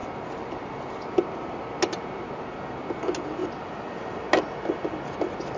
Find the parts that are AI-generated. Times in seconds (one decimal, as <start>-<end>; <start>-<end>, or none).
none